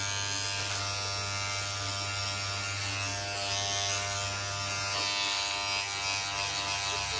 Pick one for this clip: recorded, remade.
recorded